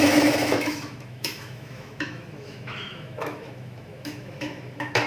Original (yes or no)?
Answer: no